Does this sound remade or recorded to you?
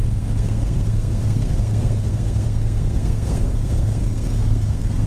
remade